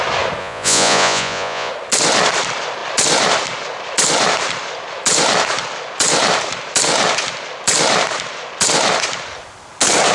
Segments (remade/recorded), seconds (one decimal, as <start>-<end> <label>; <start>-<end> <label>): 0.0-0.4 recorded; 0.4-1.7 remade; 1.7-10.1 recorded